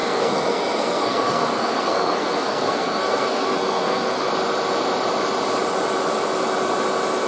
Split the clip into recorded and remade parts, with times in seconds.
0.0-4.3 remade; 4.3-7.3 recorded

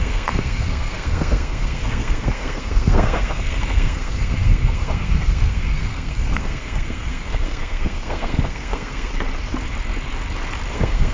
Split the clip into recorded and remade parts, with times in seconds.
0.0-9.1 remade; 9.1-10.7 recorded; 10.7-11.1 remade

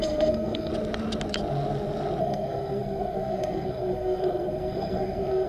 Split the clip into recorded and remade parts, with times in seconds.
0.0-0.7 remade; 0.7-2.2 recorded; 2.2-5.5 remade

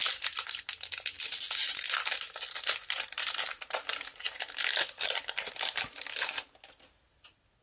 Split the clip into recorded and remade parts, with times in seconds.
0.0-7.6 recorded

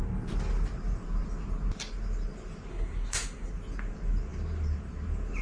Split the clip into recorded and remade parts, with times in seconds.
0.0-2.7 recorded; 2.7-3.5 remade; 3.5-5.4 recorded

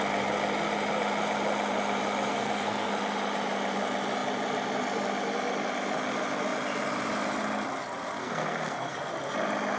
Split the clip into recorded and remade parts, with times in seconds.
0.0-2.3 recorded; 2.3-2.9 remade; 2.9-8.2 recorded; 8.2-9.1 remade; 9.1-9.8 recorded

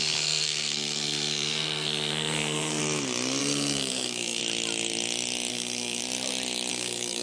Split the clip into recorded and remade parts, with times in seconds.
0.0-2.8 remade; 2.8-3.4 recorded; 3.4-4.4 remade; 4.4-5.5 recorded; 5.5-6.0 remade; 6.0-6.7 recorded; 6.7-7.2 remade

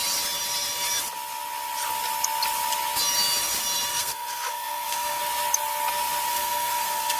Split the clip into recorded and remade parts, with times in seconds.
0.0-3.9 recorded; 3.9-5.2 remade; 5.2-6.3 recorded; 6.3-7.2 remade